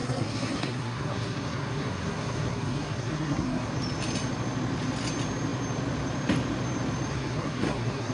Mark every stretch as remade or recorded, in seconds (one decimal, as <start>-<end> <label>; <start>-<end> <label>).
0.0-3.7 remade; 3.7-7.1 recorded; 7.1-8.1 remade